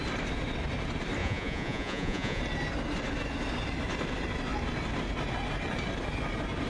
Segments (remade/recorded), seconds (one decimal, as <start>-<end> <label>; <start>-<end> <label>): 0.0-1.2 recorded; 1.2-2.4 remade; 2.4-6.7 recorded